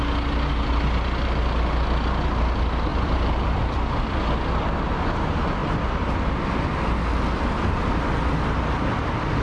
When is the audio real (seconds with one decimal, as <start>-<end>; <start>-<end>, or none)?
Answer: 0.0-2.9; 3.6-9.4